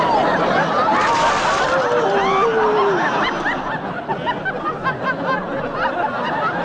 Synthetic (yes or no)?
no